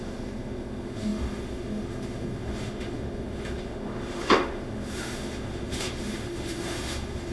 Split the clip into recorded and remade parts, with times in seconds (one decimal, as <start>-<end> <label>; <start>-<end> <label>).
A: 0.0-7.3 remade